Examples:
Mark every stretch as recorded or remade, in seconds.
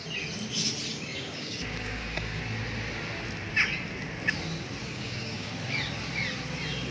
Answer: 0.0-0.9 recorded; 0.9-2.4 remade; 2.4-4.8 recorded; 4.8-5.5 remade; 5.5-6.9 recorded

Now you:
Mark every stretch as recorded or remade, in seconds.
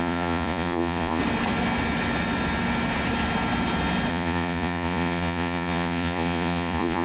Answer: 0.0-1.2 remade; 1.2-4.1 recorded; 4.1-7.0 remade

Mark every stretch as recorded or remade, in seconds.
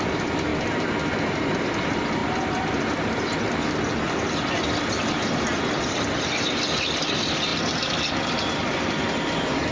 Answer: 0.0-0.5 remade; 0.5-1.3 recorded; 1.3-2.2 remade; 2.2-4.5 recorded; 4.5-7.5 remade; 7.5-8.3 recorded; 8.3-9.7 remade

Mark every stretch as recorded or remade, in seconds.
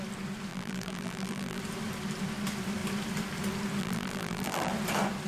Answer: 0.0-0.5 recorded; 0.5-1.6 remade; 1.6-3.8 recorded; 3.8-4.7 remade; 4.7-5.3 recorded